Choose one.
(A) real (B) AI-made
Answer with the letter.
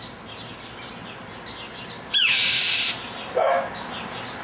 A